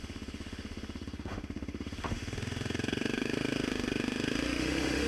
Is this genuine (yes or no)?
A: no